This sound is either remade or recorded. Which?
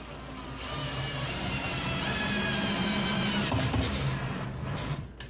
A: recorded